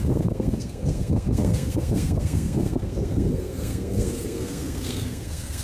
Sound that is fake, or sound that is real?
fake